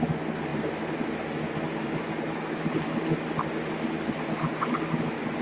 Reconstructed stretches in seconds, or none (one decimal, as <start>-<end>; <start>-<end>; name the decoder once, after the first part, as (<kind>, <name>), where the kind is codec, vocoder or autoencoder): none